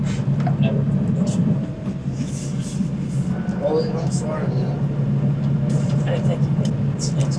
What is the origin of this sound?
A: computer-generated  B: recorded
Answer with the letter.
B